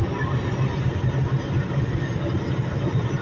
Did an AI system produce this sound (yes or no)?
no